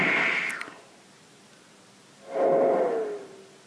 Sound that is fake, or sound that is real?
real